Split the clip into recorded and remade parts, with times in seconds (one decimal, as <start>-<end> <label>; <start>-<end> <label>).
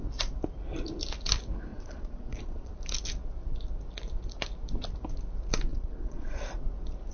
0.0-1.7 recorded; 1.7-2.7 remade; 2.7-5.7 recorded; 5.7-6.5 remade; 6.5-7.1 recorded